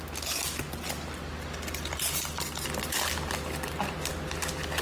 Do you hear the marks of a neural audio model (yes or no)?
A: no